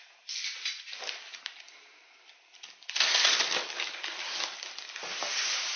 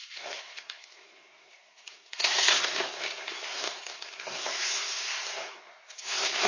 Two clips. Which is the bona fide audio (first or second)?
first